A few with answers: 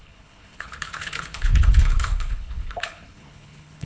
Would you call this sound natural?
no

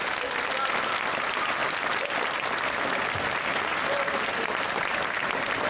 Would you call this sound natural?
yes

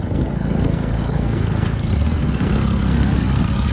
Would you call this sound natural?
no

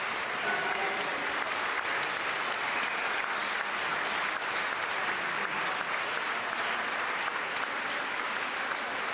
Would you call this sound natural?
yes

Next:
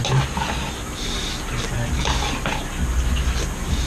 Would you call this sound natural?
yes